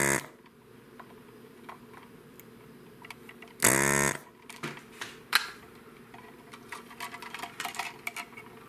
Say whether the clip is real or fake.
real